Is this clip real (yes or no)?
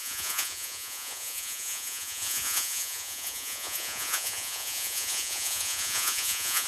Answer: no